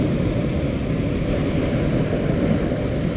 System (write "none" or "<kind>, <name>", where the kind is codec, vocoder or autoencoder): none